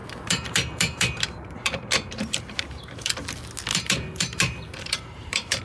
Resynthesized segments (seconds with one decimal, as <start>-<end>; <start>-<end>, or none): 0.0-3.1; 3.7-5.6